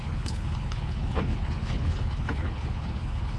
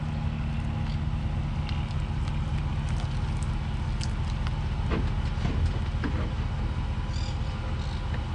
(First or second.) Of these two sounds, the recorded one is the second